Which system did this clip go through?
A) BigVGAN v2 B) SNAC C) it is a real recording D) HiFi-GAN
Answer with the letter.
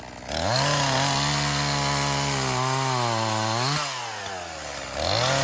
C